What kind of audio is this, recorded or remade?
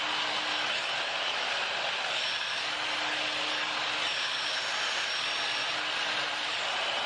recorded